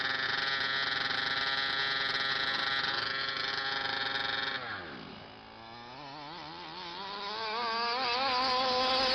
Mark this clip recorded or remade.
recorded